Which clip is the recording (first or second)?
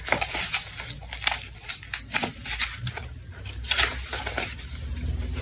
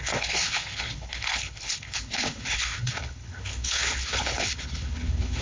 first